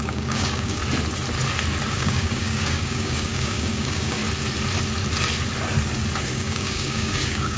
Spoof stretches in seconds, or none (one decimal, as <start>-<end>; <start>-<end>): 0.0-0.8; 1.9-4.2; 6.3-7.6